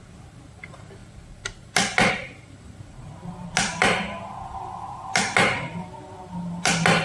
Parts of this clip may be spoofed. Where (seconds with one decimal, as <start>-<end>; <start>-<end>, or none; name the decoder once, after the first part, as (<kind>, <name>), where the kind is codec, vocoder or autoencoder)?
none